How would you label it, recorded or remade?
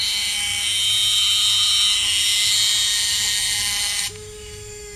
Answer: remade